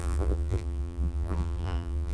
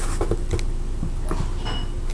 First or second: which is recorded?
second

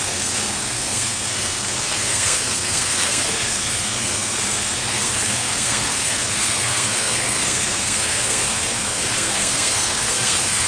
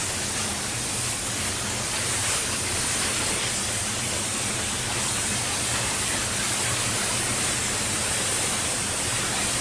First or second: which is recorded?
second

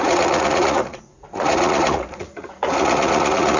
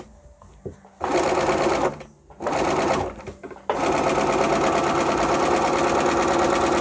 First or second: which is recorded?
second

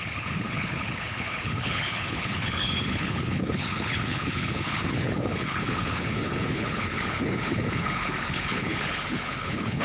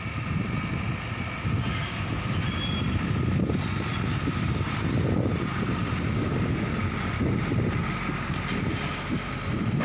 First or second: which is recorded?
second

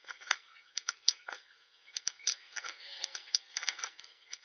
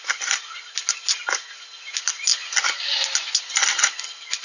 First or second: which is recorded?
second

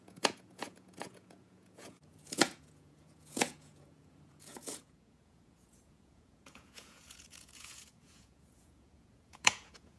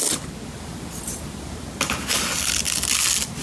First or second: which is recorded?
second